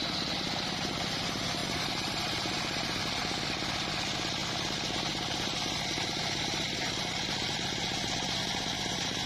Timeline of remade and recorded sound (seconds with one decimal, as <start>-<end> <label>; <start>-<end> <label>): 0.0-1.6 recorded; 1.6-3.0 remade; 3.0-9.3 recorded